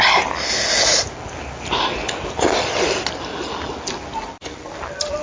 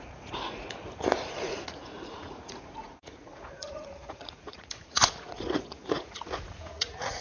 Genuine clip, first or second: first